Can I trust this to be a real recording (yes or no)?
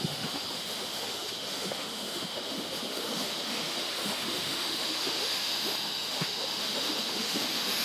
no